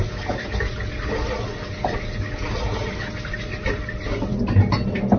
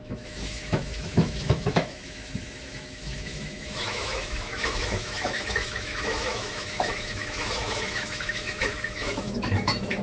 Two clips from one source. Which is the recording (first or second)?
first